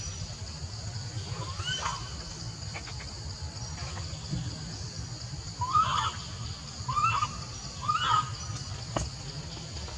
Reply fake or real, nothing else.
real